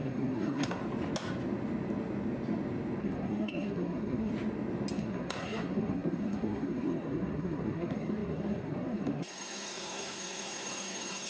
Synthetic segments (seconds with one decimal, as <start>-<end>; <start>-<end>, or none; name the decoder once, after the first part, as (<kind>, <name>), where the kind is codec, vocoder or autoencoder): 0.0-0.8 (codec, SNAC); 3.0-4.3; 4.9-11.3